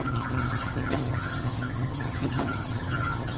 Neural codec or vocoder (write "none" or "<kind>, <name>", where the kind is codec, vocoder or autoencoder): vocoder, HiFi-GAN